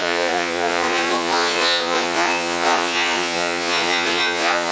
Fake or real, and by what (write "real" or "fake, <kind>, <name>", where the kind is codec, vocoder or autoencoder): fake, vocoder, Vocos